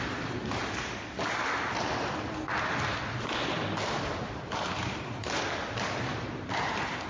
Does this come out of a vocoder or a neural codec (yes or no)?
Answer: no